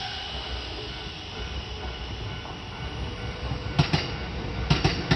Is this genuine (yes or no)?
yes